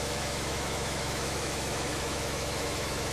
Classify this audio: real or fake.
fake